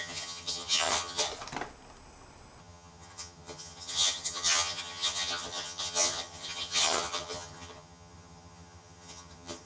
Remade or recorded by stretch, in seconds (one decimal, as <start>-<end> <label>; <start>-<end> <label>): 0.0-1.3 remade; 1.3-2.6 recorded; 2.6-9.7 remade